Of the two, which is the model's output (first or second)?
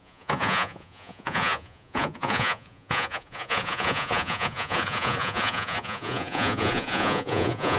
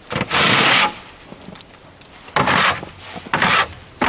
first